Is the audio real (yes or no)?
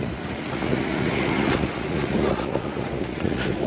no